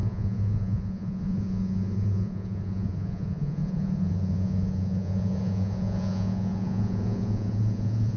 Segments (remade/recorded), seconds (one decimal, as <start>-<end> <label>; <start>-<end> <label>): 0.0-8.2 remade